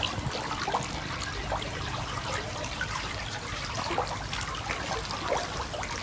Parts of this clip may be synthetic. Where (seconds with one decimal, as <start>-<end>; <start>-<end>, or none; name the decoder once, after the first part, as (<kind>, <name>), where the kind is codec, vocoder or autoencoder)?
1.4-3.9 (vocoder, BigVGAN v2)